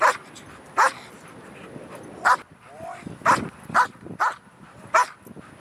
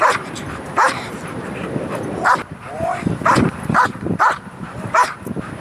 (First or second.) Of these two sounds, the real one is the first